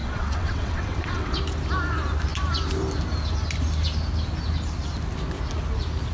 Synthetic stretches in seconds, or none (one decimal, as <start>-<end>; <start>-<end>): 0.0-1.4